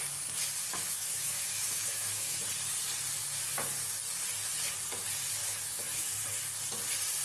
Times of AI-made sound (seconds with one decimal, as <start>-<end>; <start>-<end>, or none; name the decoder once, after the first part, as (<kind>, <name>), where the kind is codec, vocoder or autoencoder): 0.6-2.5 (autoencoder, DAC-VAE); 5.4-6.1